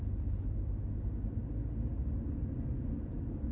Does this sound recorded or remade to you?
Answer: recorded